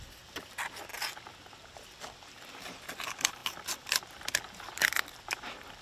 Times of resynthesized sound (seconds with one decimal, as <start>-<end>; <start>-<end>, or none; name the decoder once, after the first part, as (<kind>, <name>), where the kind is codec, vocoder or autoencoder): none